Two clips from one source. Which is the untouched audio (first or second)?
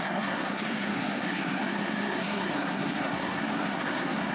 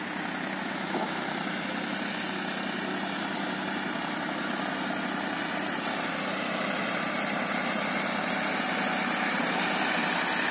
second